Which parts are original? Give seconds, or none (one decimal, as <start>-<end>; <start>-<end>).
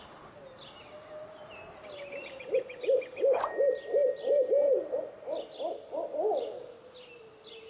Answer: 0.0-7.7